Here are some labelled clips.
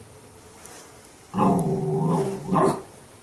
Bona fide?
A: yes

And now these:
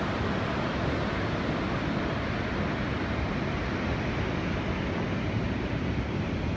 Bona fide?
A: yes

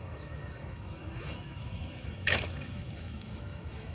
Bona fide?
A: no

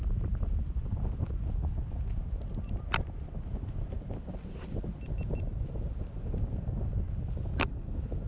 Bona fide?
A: yes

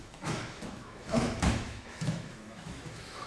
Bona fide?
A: no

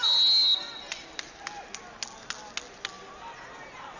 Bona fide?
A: yes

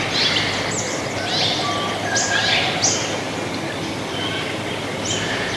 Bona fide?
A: yes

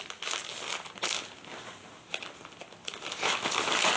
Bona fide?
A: yes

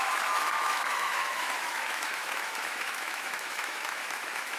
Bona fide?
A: no